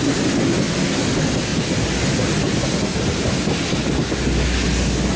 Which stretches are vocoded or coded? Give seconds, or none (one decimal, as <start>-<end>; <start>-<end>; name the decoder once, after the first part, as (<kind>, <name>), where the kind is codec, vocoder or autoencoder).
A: none